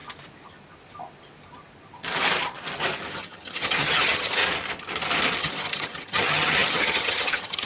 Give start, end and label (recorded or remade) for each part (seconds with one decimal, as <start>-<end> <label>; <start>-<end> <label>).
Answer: 0.0-3.1 recorded; 3.1-4.4 remade; 4.4-5.4 recorded; 5.4-7.7 remade